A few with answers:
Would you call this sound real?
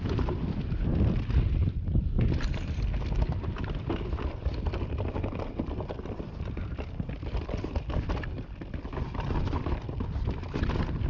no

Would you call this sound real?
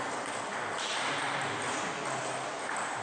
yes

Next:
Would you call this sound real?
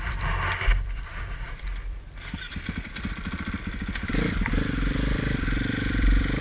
no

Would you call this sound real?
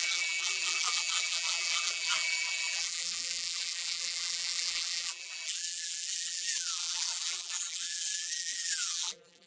no